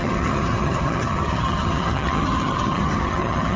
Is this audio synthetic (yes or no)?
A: yes